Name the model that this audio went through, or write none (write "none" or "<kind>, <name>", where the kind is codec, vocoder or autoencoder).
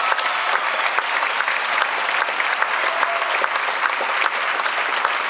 none